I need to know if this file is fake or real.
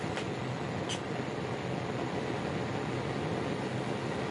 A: real